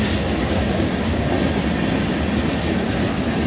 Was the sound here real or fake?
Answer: real